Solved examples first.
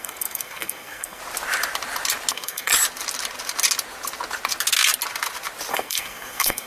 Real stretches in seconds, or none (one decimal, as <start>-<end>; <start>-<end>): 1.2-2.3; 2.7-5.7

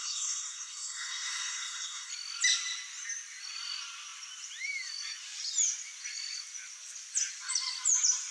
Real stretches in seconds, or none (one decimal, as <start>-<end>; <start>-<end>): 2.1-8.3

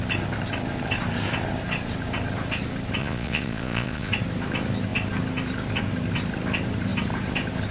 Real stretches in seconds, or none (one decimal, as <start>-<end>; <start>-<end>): 0.0-3.0; 4.1-7.7

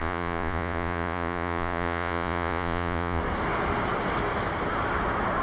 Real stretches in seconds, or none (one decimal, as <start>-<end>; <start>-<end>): 3.2-5.4

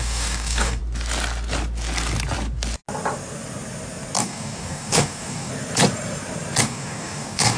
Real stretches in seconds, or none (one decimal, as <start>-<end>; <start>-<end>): 0.8-4.2; 5.5-6.6